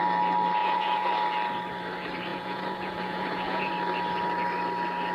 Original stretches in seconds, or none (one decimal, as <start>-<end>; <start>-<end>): 0.0-0.6; 1.1-2.3; 3.7-5.1